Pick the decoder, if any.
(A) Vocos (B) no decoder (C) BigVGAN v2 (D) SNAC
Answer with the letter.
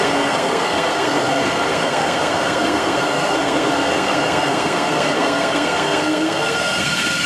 D